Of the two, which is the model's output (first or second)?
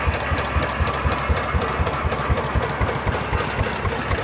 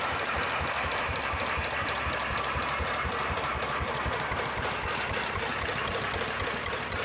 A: second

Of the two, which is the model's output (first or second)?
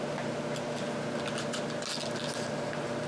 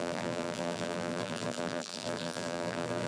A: second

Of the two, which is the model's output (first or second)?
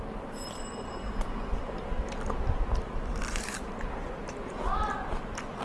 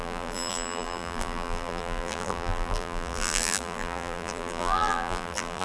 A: second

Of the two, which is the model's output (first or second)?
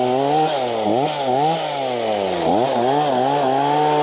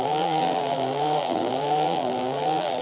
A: second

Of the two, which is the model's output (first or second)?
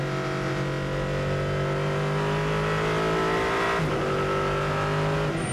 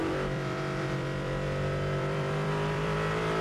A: second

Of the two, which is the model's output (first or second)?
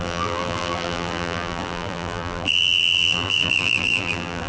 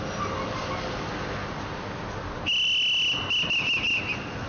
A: first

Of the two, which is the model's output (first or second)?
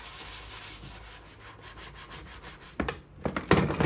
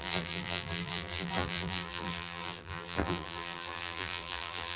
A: second